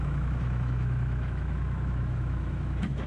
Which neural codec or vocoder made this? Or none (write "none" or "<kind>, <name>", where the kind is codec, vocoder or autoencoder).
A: autoencoder, DAC-VAE